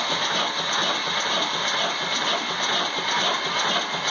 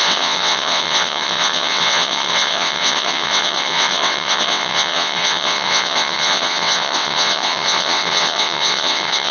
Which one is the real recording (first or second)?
first